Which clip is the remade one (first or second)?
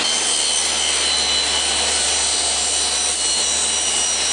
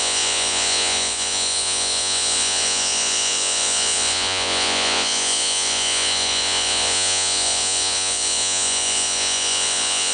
second